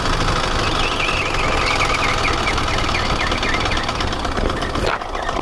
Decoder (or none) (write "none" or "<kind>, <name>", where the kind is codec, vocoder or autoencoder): none